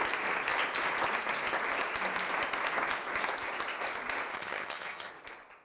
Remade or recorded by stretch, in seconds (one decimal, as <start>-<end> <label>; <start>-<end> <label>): 0.0-4.3 recorded; 4.3-5.1 remade; 5.1-5.6 recorded